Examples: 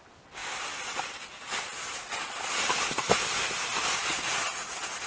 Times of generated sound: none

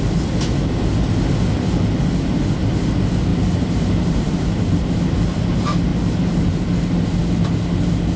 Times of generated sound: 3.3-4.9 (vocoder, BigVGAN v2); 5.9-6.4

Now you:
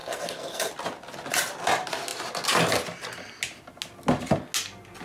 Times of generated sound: 0.0-0.7 (codec, SNAC)